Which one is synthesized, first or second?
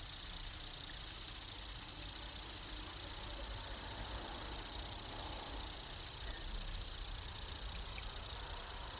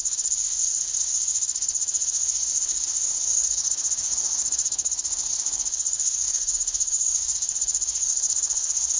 second